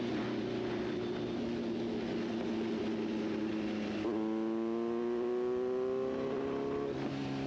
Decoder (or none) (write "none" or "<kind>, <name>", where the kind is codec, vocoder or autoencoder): none